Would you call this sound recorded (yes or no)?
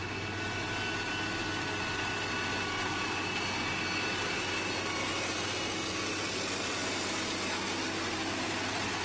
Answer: yes